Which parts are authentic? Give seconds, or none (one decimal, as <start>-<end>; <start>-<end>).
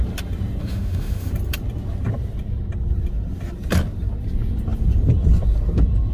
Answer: 0.0-0.6; 1.3-6.1